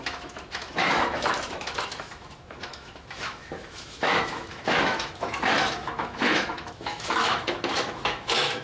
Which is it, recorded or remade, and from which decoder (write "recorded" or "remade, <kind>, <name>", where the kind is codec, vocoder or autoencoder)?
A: remade, autoencoder, DAC-VAE